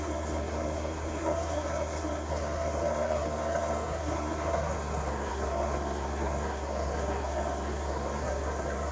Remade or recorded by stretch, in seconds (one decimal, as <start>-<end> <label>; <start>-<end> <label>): 0.0-8.9 remade